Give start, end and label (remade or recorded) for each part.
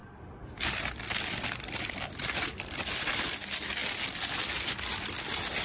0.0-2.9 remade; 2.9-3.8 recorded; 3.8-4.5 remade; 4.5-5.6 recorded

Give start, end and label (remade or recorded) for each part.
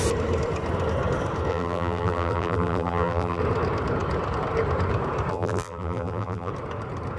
0.0-1.5 recorded; 1.5-3.4 remade; 3.4-5.3 recorded; 5.3-6.5 remade; 6.5-7.2 recorded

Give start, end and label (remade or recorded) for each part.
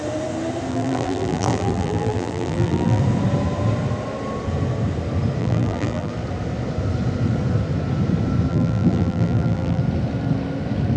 0.0-0.7 recorded; 0.7-3.0 remade; 3.0-5.4 recorded; 5.4-6.1 remade; 6.1-8.5 recorded; 8.5-9.8 remade; 9.8-11.0 recorded